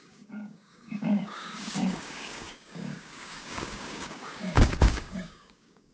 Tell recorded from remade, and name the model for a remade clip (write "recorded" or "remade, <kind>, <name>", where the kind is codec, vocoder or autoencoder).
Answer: remade, codec, DAC